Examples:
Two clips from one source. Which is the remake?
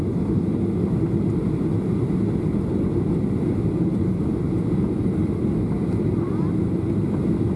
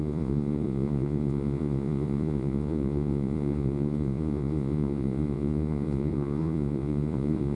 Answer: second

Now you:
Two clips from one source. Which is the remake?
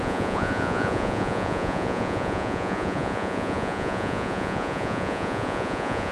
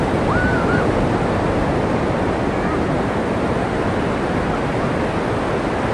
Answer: first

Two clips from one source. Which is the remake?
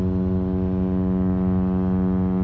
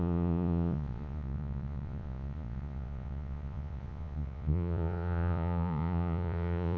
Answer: second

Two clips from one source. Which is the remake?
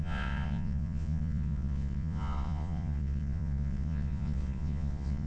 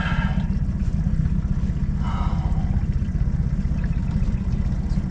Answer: first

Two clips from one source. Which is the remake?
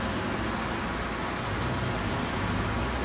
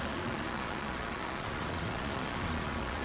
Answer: second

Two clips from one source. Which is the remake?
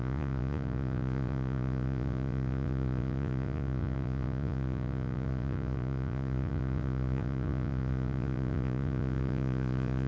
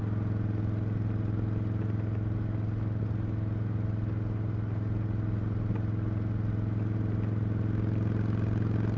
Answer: first